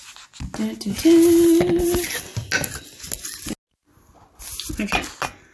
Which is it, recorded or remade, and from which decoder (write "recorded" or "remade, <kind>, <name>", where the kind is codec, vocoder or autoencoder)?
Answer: recorded